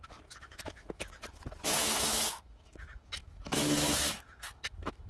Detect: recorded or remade remade